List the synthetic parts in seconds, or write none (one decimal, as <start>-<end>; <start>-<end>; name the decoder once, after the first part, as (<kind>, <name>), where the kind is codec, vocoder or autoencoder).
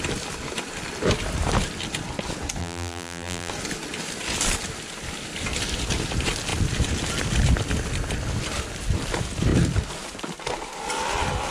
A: 2.6-3.5 (vocoder, BigVGAN v2)